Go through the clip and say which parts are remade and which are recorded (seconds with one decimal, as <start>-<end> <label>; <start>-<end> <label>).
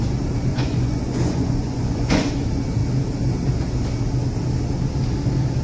0.0-0.5 recorded; 0.5-2.3 remade; 2.3-5.6 recorded